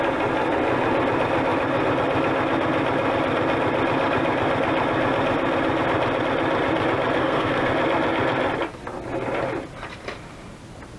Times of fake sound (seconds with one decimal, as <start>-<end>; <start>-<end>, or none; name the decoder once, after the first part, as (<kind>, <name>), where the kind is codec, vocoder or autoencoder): 7.2-7.7 (codec, SNAC)